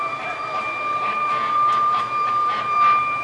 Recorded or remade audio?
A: remade